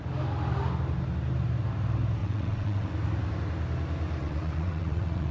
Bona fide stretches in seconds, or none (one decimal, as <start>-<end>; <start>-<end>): 0.0-2.2; 2.9-4.2